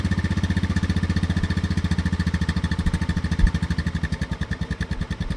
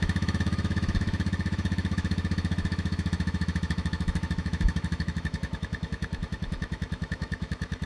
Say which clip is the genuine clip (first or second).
first